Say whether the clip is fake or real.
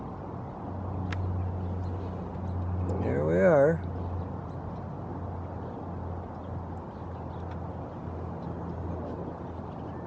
real